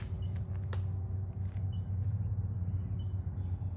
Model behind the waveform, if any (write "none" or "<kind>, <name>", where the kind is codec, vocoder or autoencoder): none